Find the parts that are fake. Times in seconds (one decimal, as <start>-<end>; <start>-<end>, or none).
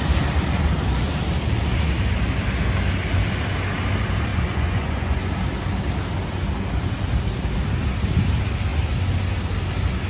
4.3-5.3